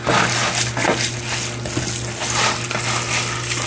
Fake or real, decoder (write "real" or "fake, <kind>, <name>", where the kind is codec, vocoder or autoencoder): real